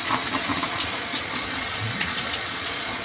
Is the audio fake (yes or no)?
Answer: yes